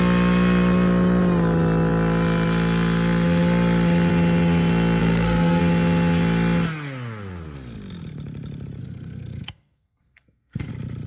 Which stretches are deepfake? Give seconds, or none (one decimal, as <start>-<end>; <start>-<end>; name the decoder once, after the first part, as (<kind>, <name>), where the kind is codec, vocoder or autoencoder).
5.0-5.6 (codec, SNAC); 8.8-10.7